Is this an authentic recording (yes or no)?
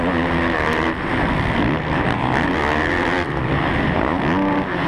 yes